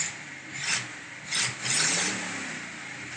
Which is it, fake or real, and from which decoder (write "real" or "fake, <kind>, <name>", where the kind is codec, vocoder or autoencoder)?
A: real